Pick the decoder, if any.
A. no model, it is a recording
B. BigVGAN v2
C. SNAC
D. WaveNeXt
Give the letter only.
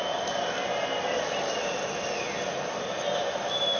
A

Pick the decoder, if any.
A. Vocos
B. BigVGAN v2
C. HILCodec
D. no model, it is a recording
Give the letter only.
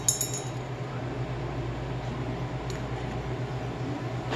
D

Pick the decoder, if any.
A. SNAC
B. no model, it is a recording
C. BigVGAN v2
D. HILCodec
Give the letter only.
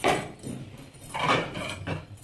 C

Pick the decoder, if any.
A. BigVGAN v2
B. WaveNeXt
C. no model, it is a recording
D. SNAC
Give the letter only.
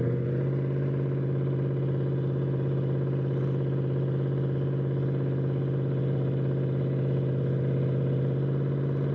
A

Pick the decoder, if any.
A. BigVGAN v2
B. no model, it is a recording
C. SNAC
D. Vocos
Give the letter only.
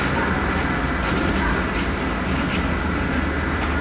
B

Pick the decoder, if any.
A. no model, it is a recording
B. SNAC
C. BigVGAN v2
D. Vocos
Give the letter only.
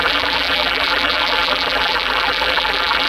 C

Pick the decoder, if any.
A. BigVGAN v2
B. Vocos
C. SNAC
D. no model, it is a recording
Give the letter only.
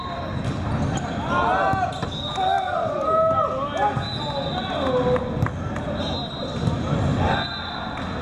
D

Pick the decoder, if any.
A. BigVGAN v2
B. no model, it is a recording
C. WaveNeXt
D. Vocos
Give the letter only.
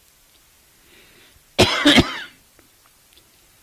B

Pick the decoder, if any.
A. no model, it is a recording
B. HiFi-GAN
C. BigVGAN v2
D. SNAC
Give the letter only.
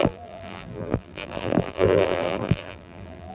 C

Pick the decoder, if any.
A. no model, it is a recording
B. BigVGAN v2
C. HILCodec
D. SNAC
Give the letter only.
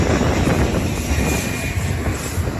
A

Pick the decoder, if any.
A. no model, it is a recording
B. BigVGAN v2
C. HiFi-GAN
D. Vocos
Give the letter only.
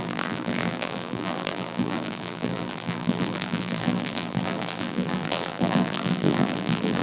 B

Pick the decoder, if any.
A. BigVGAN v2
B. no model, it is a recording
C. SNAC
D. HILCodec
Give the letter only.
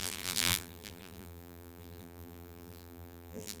A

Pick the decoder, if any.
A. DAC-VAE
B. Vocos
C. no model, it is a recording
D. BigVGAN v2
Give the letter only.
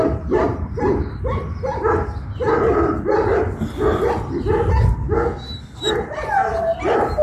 C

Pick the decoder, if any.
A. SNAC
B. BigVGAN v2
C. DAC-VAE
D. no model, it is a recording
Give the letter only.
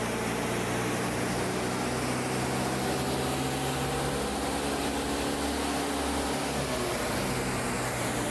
D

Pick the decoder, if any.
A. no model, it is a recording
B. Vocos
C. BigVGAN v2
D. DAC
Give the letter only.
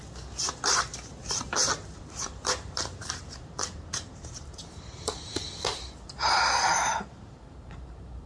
C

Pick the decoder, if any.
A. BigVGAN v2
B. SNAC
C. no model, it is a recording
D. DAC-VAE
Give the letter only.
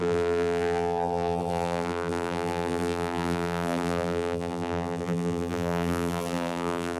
A